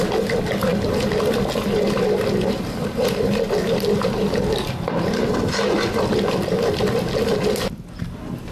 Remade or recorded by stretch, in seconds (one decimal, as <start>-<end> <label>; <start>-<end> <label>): 0.0-0.7 recorded; 0.7-1.6 remade; 1.6-8.5 recorded